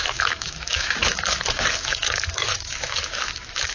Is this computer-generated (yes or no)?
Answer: yes